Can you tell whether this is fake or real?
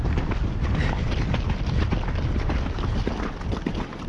real